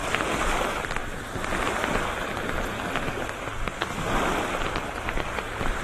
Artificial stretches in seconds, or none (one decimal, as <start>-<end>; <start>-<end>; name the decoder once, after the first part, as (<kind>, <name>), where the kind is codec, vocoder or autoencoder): none

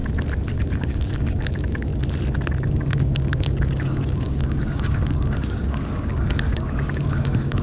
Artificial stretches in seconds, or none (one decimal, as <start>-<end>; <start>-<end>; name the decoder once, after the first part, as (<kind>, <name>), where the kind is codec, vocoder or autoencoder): 0.5-1.9 (codec, DAC); 2.6-7.6

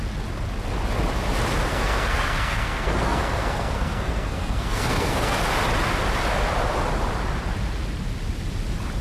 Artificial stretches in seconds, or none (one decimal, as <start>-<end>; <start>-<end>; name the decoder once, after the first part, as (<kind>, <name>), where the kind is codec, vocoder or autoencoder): 1.7-5.4 (codec, SNAC)

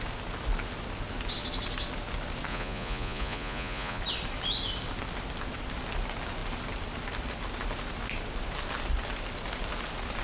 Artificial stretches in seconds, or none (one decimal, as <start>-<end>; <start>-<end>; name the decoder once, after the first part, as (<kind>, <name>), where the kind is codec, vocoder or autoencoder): 2.5-4.0 (vocoder, Vocos)